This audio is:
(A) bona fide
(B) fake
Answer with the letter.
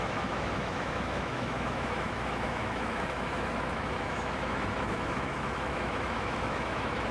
B